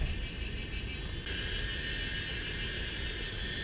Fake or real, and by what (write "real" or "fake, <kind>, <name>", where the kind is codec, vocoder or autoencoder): real